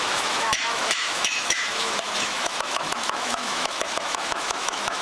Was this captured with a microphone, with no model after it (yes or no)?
no